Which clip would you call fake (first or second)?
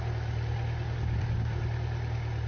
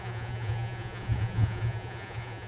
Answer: second